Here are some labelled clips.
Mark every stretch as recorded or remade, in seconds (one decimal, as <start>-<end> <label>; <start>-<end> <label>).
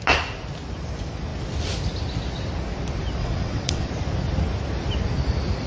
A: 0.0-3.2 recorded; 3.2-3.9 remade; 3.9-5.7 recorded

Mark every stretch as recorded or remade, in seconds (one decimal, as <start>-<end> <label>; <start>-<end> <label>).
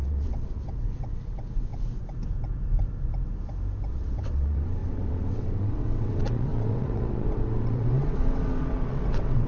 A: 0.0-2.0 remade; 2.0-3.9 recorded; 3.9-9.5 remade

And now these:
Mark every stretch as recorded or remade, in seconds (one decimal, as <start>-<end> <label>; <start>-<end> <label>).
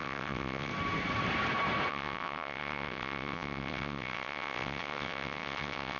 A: 0.0-0.7 remade; 0.7-1.9 recorded; 1.9-6.0 remade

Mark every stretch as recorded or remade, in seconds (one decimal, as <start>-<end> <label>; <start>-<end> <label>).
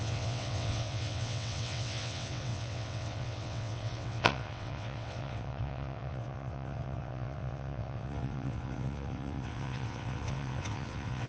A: 0.0-11.3 remade